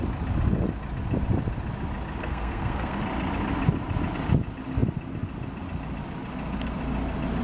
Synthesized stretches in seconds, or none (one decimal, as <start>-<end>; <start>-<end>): 2.2-3.0